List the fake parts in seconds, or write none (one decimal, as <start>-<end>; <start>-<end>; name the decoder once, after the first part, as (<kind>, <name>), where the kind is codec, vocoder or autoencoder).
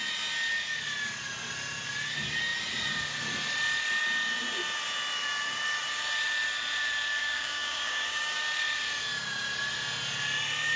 7.2-8.4 (codec, DAC)